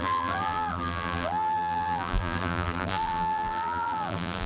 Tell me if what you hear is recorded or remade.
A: remade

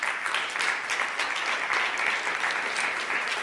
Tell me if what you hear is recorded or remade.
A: recorded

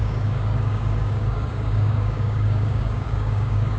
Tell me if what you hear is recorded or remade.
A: remade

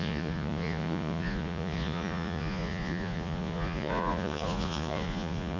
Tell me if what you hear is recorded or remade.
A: remade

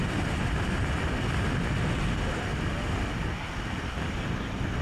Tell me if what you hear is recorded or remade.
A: recorded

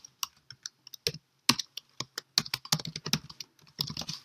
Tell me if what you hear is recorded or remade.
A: recorded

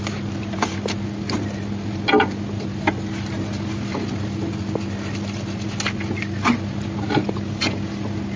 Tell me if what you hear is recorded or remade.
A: recorded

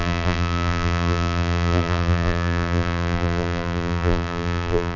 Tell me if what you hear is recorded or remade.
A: remade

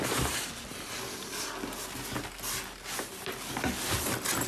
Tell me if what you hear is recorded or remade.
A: recorded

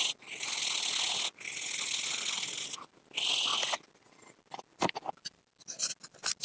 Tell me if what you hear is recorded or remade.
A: recorded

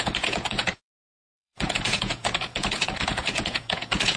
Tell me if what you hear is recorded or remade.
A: remade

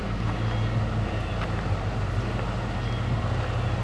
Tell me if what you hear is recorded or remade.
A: recorded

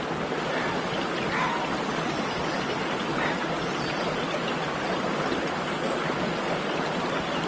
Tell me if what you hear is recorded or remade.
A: recorded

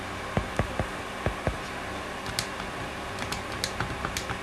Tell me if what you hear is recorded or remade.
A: recorded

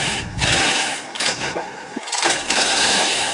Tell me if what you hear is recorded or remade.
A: remade